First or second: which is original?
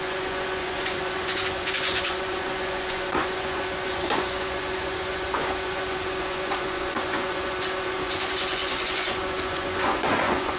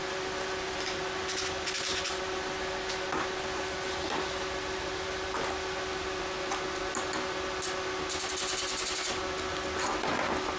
second